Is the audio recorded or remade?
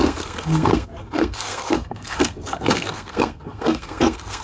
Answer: remade